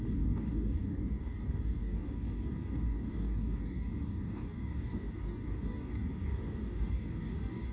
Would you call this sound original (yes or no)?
no